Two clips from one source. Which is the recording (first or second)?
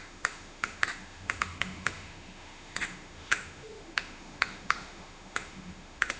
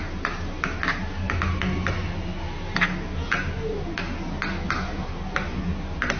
second